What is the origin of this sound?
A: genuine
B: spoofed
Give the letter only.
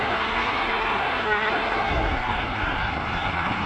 B